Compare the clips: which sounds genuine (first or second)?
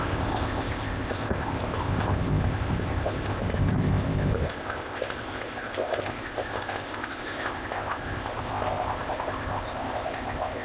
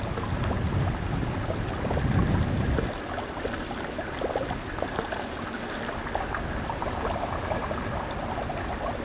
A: second